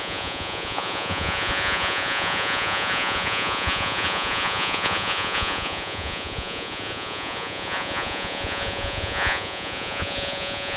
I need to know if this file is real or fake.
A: fake